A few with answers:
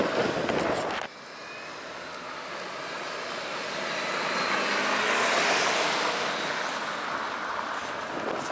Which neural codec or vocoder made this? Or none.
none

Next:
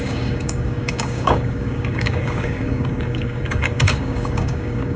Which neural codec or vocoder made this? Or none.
codec, DAC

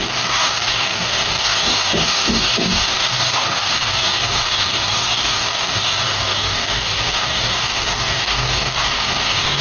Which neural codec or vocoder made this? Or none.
codec, DAC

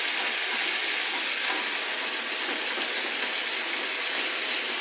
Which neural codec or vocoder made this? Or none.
none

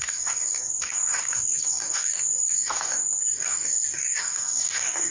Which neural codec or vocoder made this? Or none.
codec, DAC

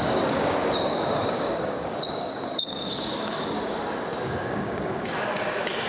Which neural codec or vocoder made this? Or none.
codec, DAC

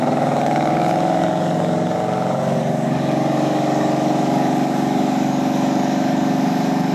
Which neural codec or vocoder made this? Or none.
codec, DAC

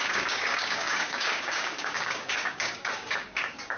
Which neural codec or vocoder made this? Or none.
codec, DAC